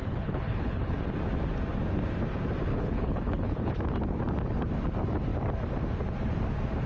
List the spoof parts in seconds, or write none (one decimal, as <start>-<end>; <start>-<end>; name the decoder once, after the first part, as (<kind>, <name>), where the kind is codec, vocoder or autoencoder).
0.0-1.0 (codec, HILCodec); 2.7-3.7